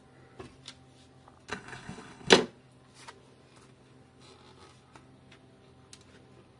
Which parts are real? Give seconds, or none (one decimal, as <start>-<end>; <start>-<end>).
0.0-1.5; 2.3-6.6